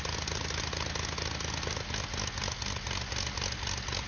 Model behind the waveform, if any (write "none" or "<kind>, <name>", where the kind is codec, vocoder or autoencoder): none